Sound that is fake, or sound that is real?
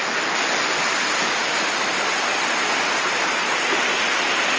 real